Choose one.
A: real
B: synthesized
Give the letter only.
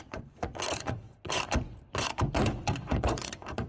B